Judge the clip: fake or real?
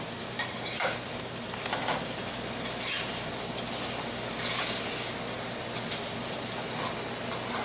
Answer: real